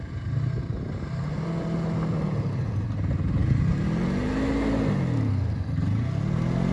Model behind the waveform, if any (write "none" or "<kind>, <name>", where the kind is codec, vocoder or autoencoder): none